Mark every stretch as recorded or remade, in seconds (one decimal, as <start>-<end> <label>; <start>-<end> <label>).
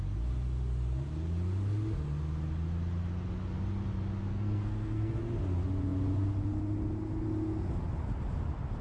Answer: 0.0-4.3 recorded; 4.3-5.2 remade; 5.2-8.8 recorded